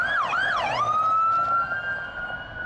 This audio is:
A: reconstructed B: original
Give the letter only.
B